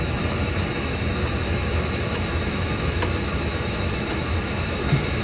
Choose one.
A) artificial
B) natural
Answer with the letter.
A